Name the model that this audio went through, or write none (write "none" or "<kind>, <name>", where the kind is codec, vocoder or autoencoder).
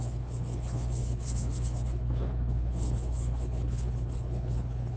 codec, HILCodec